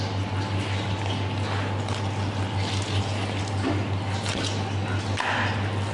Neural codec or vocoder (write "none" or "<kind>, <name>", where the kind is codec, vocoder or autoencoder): none